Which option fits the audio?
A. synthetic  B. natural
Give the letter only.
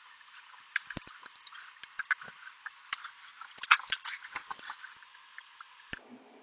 B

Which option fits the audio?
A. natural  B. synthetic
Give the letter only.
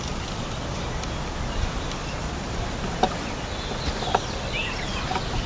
B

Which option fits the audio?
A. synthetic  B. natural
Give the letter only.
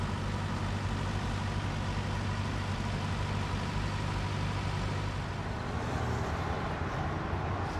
B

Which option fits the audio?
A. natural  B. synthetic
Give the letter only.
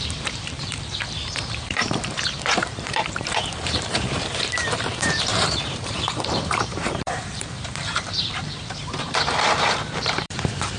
B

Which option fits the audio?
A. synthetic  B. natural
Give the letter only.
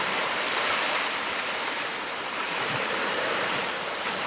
A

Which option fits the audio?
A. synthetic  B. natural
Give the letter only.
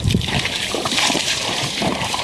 A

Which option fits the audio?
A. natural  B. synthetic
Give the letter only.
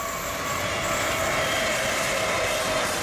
A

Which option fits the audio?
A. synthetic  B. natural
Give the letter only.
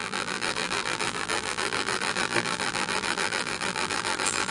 A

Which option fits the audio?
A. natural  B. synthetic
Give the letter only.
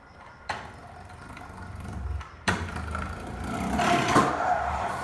B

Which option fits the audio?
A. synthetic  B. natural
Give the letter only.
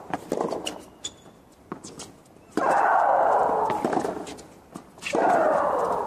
B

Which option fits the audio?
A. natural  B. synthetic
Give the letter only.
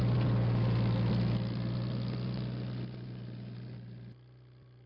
A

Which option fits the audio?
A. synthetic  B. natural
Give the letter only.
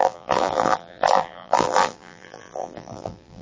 A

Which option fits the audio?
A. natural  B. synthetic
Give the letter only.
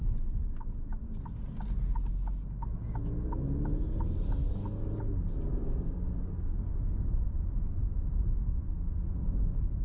A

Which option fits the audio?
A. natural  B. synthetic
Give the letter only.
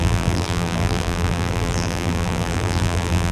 B